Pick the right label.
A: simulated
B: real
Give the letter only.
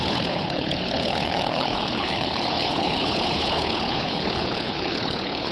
A